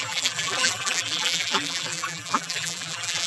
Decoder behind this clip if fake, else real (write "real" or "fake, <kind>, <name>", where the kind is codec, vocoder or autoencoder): fake, vocoder, BigVGAN v2